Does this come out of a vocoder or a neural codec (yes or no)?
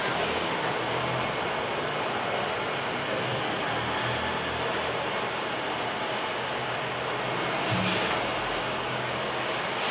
no